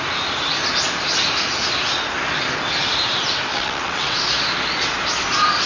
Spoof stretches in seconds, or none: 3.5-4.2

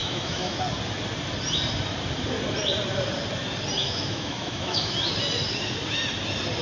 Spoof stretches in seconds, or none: 0.0-0.6; 3.8-4.9

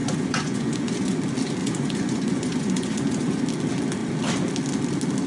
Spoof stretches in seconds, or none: 0.0-1.2; 1.6-3.4

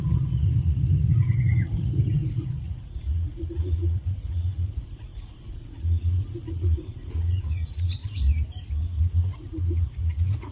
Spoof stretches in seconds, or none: 0.0-8.0; 9.0-10.5

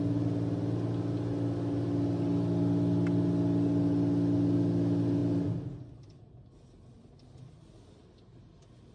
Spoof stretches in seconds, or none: none

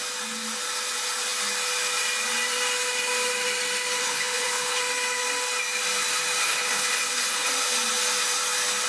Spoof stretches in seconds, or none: 4.0-4.8; 6.4-7.5